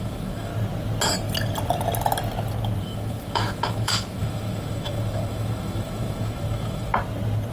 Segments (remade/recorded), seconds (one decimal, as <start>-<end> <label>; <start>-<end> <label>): 0.0-0.5 remade; 0.5-2.8 recorded; 2.8-6.9 remade; 6.9-7.5 recorded